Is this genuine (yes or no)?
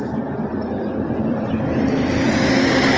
yes